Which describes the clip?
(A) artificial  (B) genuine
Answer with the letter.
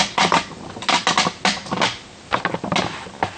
B